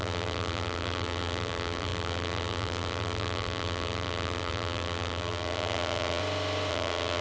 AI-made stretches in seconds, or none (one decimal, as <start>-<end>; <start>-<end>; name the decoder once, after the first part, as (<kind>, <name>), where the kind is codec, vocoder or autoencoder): 0.0-6.2 (vocoder, BigVGAN v2); 6.7-7.2